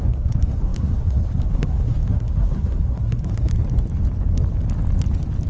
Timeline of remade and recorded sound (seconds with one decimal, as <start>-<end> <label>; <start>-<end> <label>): 0.0-3.5 remade; 3.5-5.5 recorded